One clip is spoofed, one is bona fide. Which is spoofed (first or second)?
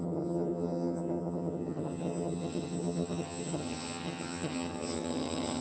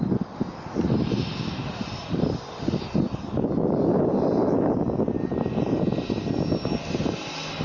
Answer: first